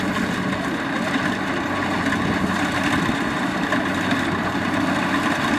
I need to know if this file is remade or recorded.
recorded